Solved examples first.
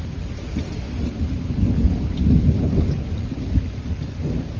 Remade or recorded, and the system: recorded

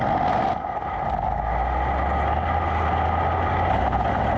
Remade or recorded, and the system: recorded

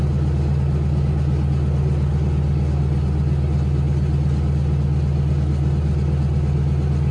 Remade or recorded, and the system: recorded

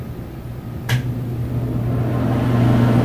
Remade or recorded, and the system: recorded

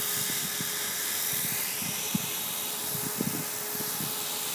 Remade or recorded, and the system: recorded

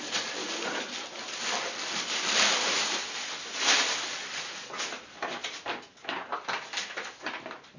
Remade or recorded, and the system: remade, vocoder, BigVGAN v2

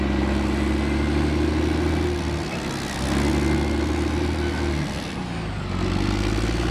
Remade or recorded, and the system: recorded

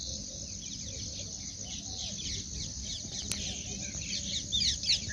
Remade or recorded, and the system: recorded